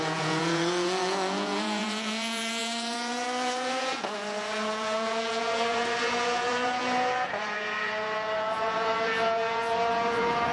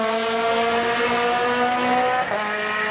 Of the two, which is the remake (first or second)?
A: first